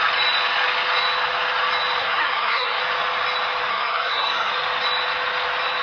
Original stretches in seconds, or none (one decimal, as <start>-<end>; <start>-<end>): 0.0-2.0; 2.8-3.7; 4.5-5.8